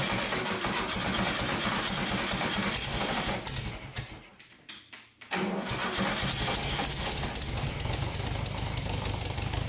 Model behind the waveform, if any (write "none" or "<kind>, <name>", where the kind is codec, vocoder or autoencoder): none